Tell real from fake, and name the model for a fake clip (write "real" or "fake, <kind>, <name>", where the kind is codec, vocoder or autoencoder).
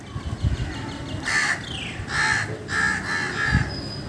real